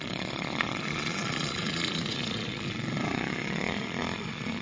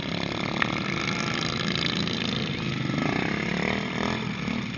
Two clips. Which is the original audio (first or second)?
second